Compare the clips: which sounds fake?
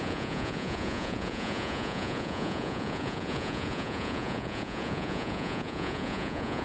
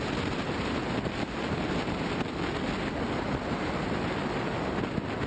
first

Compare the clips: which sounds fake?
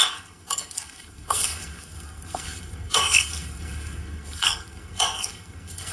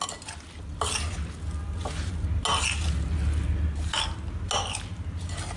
first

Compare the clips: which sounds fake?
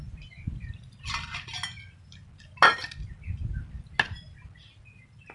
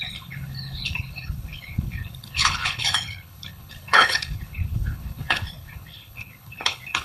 second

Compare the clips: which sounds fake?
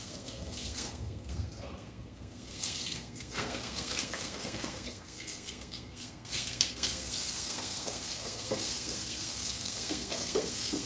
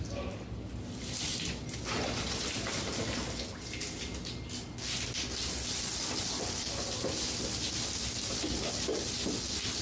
first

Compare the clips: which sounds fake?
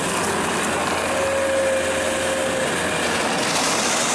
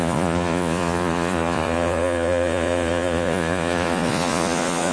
second